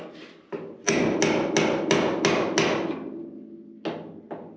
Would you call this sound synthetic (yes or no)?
no